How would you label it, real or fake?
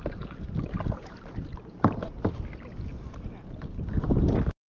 real